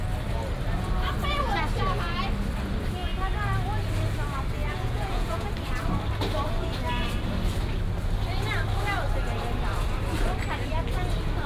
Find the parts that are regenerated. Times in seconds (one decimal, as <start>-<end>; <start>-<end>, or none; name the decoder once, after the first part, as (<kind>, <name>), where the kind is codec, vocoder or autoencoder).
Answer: 4.6-5.5 (vocoder, Vocos)